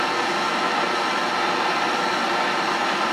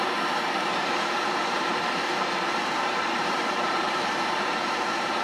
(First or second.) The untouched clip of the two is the first